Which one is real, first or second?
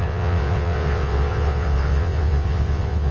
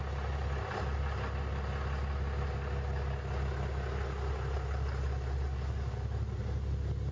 second